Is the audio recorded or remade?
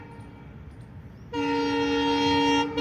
recorded